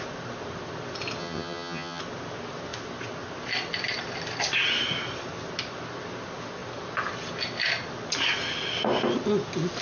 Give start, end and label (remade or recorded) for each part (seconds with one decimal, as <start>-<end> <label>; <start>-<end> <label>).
0.0-1.2 recorded; 1.2-2.0 remade; 2.0-9.8 recorded